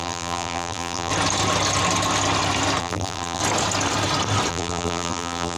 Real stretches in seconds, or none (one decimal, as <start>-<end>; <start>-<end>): 1.1-2.8; 3.4-4.5